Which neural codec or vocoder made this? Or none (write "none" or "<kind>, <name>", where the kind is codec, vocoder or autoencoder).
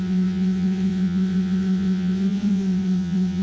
vocoder, WaveNeXt